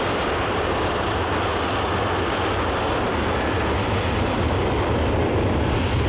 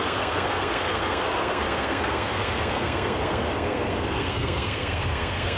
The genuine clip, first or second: first